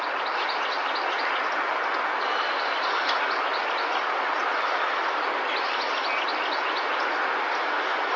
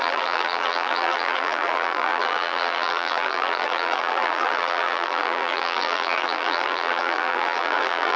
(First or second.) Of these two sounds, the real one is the first